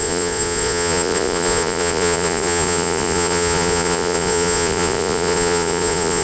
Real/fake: fake